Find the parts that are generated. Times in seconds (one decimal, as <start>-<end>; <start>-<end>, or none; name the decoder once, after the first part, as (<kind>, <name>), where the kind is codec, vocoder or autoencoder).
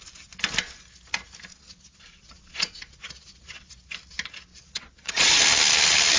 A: 1.5-3.7 (vocoder, Vocos); 4.5-5.4